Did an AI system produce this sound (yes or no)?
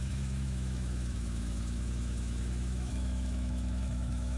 yes